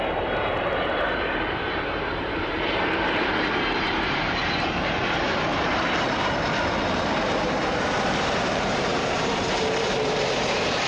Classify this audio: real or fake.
fake